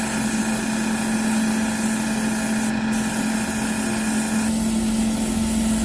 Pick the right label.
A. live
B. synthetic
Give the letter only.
A